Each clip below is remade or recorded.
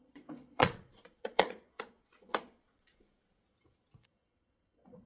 remade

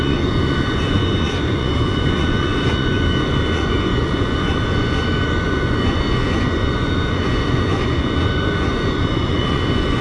remade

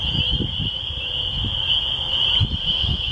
recorded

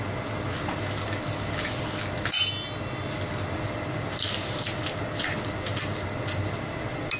recorded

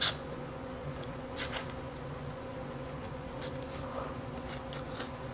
remade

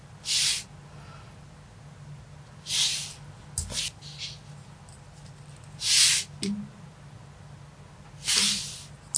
recorded